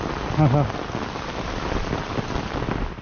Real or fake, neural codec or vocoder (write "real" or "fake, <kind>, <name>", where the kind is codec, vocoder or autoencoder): real